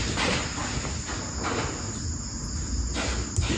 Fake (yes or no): no